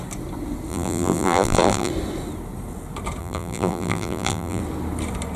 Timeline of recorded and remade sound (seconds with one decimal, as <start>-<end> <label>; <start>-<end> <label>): 0.0-0.7 recorded; 0.7-1.9 remade; 1.9-3.2 recorded; 3.2-4.6 remade; 4.6-5.4 recorded